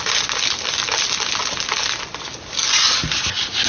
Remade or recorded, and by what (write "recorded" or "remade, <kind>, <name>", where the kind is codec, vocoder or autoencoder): recorded